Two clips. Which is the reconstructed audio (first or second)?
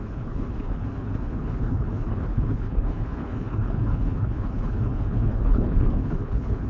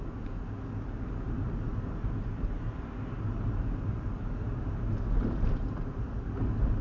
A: first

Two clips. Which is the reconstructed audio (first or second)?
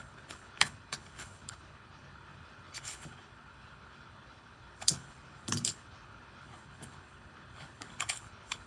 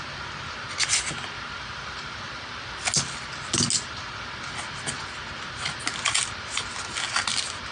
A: first